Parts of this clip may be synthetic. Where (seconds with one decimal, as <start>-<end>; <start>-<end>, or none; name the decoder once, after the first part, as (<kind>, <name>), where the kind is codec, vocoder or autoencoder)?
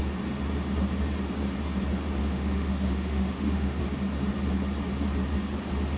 2.2-3.8 (autoencoder, DAC-VAE)